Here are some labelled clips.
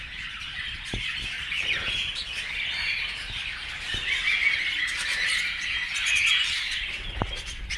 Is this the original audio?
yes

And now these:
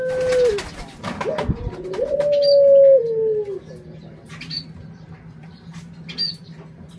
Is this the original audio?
yes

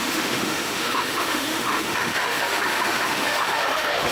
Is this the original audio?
no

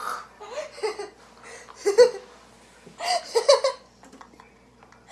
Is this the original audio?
yes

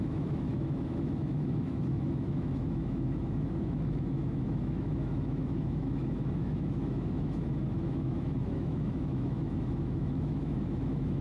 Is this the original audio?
no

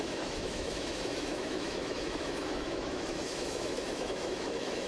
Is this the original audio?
no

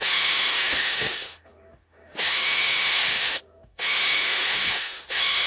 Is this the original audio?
no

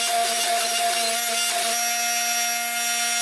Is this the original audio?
yes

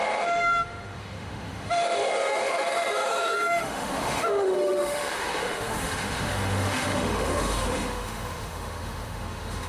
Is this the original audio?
no